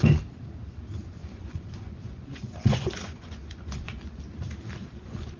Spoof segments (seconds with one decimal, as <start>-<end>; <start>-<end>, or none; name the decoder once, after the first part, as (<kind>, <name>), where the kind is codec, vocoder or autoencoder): 1.2-4.2 (vocoder, Vocos); 4.8-5.4